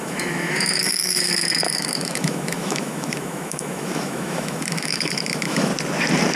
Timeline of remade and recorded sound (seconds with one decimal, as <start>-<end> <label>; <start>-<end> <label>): 0.0-5.7 remade; 5.7-6.4 recorded